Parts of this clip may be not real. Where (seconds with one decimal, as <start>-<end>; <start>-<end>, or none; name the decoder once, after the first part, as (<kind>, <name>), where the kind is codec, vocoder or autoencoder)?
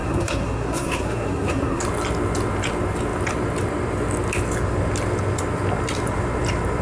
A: 0.0-1.8 (codec, SNAC)